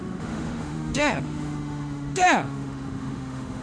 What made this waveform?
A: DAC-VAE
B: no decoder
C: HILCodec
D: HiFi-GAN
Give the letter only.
A